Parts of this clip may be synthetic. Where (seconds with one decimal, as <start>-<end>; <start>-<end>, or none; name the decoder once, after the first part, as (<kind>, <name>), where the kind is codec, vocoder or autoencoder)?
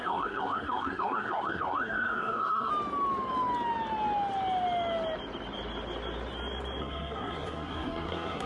0.0-2.7 (codec, SNAC); 6.8-8.5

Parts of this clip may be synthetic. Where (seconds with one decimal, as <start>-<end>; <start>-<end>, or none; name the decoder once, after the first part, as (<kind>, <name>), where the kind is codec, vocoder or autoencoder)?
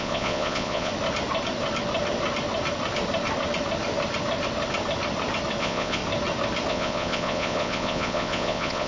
0.0-0.9 (vocoder, Vocos); 5.6-6.0; 6.7-8.9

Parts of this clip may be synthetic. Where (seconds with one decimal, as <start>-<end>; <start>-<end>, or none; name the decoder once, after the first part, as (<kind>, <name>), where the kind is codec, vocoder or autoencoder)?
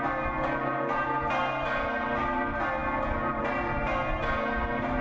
none